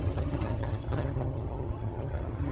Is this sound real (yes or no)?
no